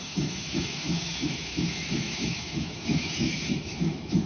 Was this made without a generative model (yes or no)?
no